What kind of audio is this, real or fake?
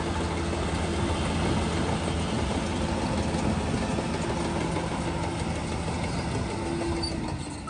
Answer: real